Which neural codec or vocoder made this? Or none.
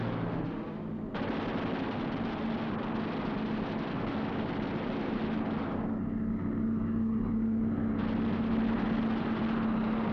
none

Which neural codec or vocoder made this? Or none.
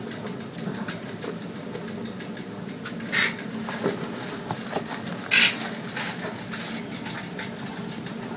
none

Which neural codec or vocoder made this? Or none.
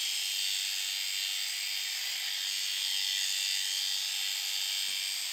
none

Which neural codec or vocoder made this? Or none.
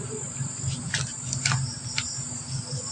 none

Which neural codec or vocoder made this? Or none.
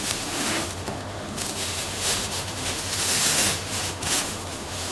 autoencoder, DAC-VAE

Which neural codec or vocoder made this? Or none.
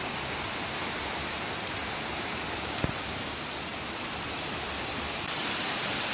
none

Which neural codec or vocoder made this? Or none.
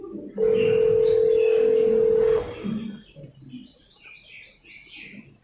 none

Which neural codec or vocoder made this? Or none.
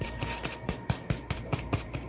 vocoder, BigVGAN v2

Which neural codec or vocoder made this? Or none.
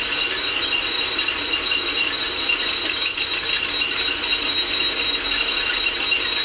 none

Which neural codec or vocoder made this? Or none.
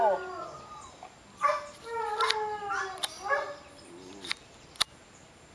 none